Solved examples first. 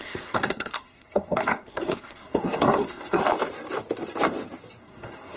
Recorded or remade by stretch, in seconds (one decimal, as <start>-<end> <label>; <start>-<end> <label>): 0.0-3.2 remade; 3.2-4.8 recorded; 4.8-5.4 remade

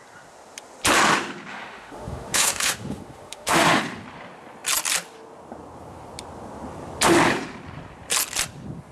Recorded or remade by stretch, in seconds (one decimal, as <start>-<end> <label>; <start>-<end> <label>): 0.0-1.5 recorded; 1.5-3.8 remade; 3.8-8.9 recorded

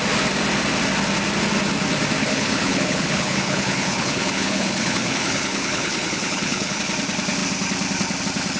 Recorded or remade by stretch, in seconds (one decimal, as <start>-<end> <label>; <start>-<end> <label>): 0.0-2.2 recorded; 2.2-6.8 remade; 6.8-8.6 recorded